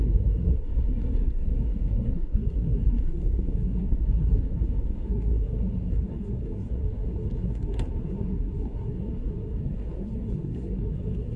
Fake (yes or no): yes